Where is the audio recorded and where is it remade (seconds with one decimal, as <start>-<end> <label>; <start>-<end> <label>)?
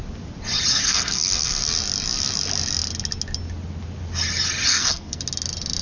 0.0-0.7 recorded; 0.7-1.6 remade; 1.6-4.7 recorded; 4.7-5.2 remade; 5.2-5.8 recorded